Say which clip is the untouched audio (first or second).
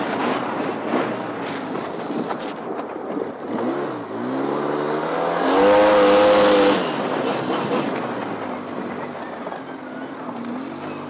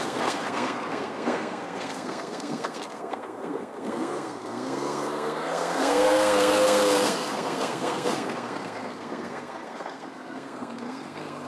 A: first